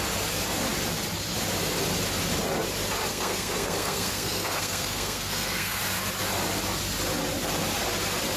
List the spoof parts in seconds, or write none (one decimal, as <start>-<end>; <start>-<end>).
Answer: 3.1-5.8